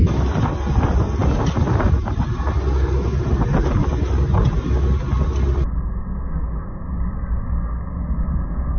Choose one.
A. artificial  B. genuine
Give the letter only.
B